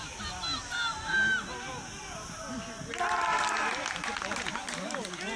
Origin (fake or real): real